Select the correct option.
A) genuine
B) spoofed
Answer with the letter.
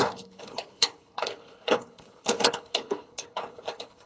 B